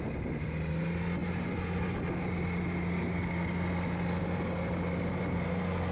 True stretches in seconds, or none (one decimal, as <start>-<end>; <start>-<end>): 0.0-5.9